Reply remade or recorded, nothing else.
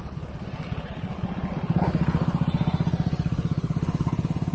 recorded